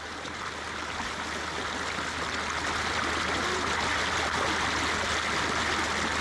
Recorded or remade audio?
recorded